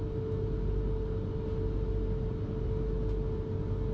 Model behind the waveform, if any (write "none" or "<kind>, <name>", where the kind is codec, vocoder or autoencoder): none